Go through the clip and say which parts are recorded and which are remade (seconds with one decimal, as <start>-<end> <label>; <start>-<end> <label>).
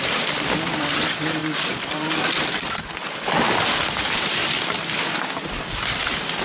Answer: 0.0-1.4 recorded; 1.4-5.2 remade; 5.2-6.4 recorded